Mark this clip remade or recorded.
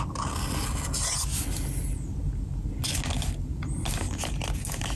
recorded